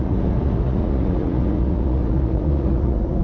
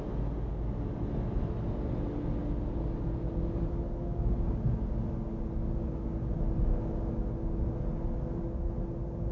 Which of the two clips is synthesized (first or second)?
first